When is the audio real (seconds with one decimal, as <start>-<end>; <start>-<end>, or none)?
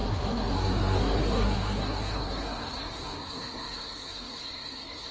none